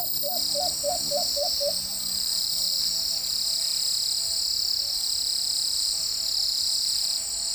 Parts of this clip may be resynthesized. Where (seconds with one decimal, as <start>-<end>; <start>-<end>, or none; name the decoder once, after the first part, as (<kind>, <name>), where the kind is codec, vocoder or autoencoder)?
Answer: 1.9-2.8 (vocoder, BigVGAN v2)